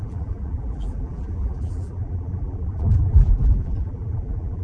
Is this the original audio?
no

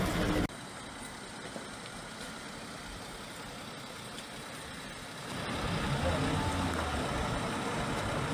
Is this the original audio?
yes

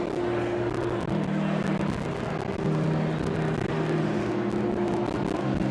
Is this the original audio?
yes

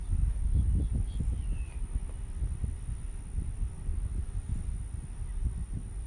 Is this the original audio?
yes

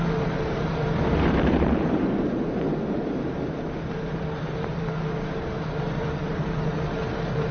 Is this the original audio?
no